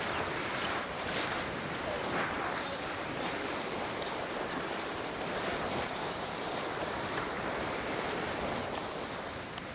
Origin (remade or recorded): remade